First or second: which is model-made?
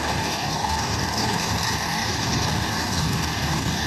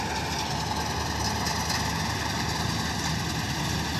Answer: first